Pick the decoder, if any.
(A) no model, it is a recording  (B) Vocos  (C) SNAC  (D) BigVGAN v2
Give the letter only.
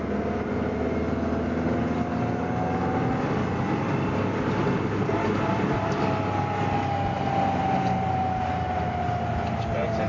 A